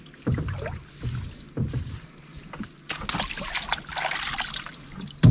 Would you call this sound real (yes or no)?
yes